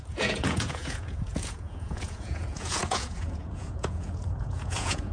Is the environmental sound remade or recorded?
remade